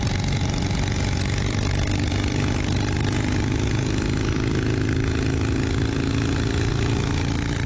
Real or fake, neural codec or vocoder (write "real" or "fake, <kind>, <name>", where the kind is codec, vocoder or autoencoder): real